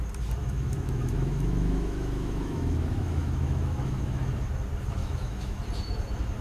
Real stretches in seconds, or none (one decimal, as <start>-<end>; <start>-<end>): 0.0-0.4; 4.2-5.0; 5.6-6.4